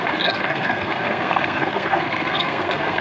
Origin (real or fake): fake